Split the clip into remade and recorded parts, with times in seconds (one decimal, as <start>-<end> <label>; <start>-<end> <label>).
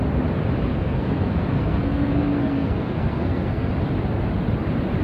0.0-0.7 recorded; 0.7-3.7 remade; 3.7-5.0 recorded